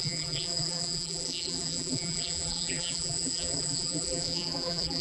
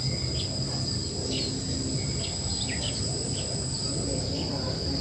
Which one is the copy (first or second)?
first